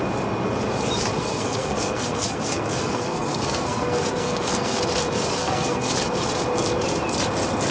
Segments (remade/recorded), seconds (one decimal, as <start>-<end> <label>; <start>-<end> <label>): 0.0-1.2 recorded; 1.2-4.8 remade; 4.8-5.4 recorded; 5.4-5.9 remade; 5.9-7.7 recorded

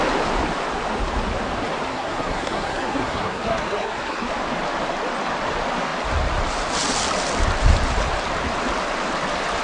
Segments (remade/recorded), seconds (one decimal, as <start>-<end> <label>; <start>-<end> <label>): 0.0-1.9 recorded; 1.9-4.3 remade; 4.3-9.6 recorded

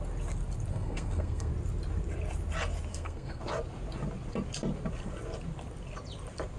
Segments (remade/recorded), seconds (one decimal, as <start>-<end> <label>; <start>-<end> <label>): 0.0-0.7 recorded; 0.7-1.5 remade; 1.5-2.9 recorded; 2.9-3.4 remade; 3.4-6.6 recorded

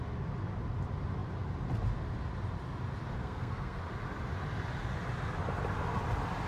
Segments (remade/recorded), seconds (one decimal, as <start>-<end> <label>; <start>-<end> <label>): 0.0-3.2 recorded; 3.2-3.8 remade; 3.8-6.5 recorded